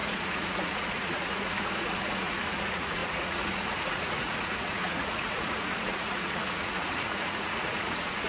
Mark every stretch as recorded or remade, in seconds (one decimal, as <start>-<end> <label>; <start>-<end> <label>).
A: 0.0-8.3 remade

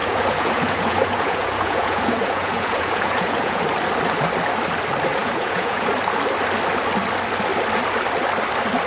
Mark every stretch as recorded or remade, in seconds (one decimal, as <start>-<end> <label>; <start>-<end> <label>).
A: 0.0-3.6 remade; 3.6-5.1 recorded; 5.1-5.9 remade; 5.9-8.9 recorded

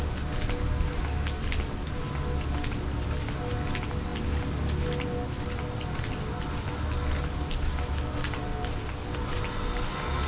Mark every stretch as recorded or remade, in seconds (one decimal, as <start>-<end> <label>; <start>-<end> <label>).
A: 0.0-10.3 recorded